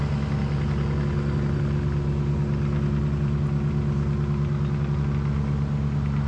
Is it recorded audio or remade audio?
recorded